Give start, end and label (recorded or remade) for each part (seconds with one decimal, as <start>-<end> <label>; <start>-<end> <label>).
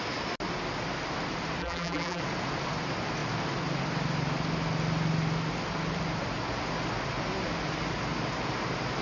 0.0-1.6 recorded; 1.6-2.2 remade; 2.2-9.0 recorded